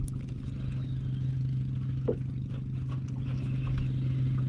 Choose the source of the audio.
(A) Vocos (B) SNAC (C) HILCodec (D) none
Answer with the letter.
D